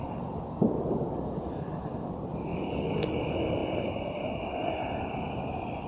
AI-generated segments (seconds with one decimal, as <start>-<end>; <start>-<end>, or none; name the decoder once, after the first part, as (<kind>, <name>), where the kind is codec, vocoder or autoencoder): none